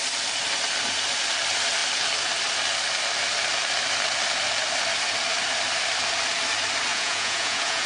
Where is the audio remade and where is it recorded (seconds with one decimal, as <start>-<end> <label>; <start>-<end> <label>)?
0.0-6.9 recorded; 6.9-7.9 remade